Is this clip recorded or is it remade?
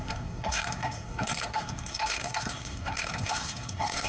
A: remade